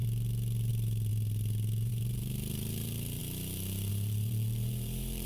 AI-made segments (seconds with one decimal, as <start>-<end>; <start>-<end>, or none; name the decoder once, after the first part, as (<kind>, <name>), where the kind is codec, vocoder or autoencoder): 0.7-3.2 (vocoder, BigVGAN v2); 3.9-5.3